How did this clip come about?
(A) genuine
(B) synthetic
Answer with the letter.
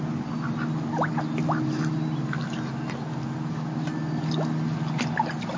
A